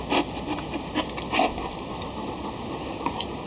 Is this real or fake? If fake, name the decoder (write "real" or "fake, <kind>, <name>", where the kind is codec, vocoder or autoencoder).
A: real